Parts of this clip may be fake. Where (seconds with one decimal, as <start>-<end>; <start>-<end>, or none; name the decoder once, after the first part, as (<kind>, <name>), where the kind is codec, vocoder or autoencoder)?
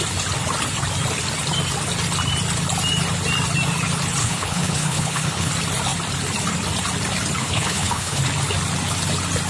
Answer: 4.2-5.5 (codec, HILCodec); 7.4-8.2